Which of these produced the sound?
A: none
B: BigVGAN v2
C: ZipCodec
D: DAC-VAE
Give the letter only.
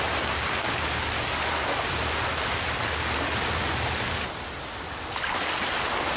A